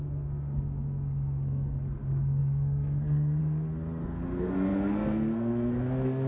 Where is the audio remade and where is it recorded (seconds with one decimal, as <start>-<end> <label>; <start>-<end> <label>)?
0.0-6.3 remade